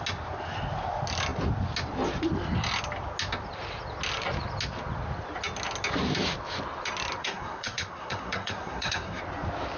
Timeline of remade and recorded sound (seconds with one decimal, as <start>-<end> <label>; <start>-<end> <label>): 0.0-7.2 recorded; 7.2-9.2 remade; 9.2-9.8 recorded